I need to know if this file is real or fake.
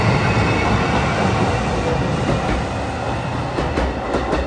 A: real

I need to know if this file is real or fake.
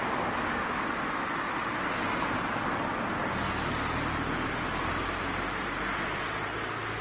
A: real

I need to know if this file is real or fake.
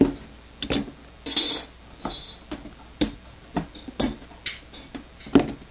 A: real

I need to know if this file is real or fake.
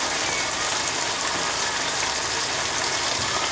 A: real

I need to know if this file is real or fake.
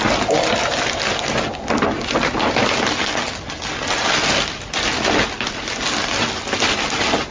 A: real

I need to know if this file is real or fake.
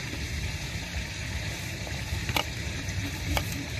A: fake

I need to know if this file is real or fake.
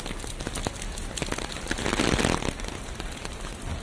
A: real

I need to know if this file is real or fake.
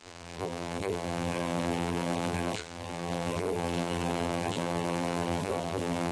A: fake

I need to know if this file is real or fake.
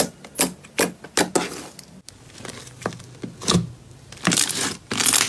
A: real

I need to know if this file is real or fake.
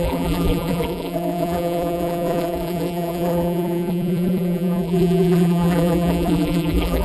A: fake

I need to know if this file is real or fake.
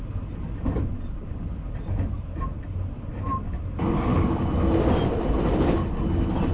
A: real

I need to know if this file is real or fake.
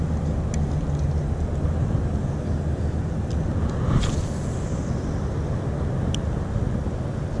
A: real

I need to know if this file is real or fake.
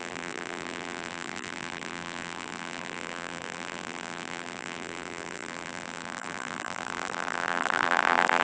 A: fake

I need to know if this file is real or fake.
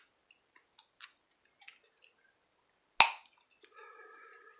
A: real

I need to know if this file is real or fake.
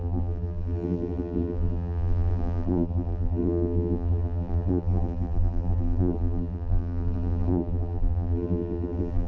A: fake